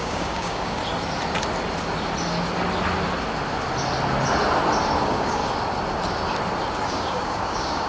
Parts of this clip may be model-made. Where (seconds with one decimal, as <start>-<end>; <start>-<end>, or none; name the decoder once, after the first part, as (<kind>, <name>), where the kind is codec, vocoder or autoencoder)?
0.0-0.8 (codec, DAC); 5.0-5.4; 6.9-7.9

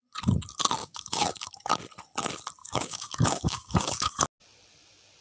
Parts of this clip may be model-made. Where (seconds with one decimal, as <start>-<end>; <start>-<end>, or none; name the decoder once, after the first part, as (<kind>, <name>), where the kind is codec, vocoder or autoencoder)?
0.8-1.7 (codec, DAC); 2.6-4.2

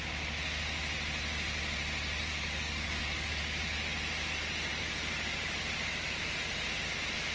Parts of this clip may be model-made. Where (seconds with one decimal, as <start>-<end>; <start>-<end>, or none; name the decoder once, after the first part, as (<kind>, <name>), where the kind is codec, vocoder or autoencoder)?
2.3-3.4 (codec, DAC)

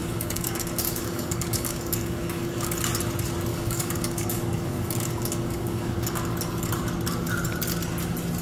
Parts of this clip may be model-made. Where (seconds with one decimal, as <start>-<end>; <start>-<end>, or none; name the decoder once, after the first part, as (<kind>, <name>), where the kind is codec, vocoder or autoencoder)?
0.0-2.7 (codec, DAC); 3.5-6.2

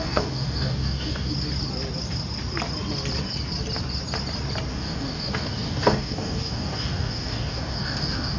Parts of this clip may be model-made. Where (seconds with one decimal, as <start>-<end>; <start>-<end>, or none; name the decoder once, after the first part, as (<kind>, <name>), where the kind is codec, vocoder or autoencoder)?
0.0-1.3 (codec, DAC); 4.7-8.4